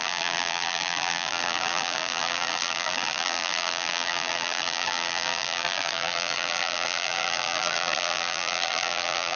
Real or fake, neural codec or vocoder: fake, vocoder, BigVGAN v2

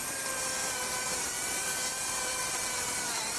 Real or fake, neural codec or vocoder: fake, vocoder, BigVGAN v2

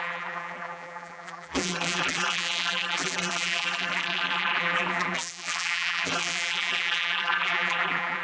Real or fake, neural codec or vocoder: fake, vocoder, BigVGAN v2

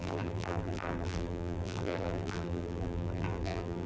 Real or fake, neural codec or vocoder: fake, vocoder, BigVGAN v2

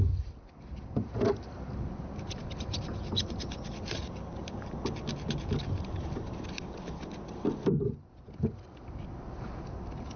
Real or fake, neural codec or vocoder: real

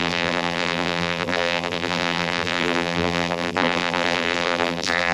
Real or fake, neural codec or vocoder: fake, vocoder, BigVGAN v2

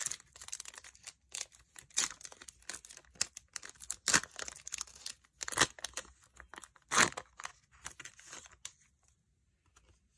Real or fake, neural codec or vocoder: real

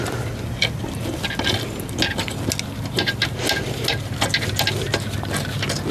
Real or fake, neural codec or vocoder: real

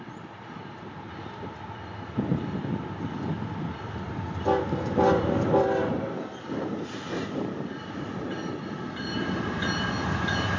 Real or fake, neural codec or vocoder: fake, vocoder, BigVGAN v2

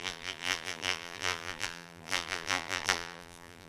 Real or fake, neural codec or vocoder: fake, vocoder, BigVGAN v2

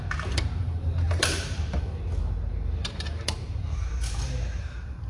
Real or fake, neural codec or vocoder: fake, vocoder, BigVGAN v2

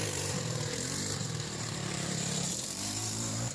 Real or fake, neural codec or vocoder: fake, vocoder, BigVGAN v2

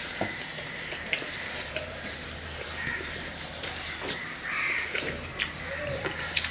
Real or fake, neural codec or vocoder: fake, vocoder, BigVGAN v2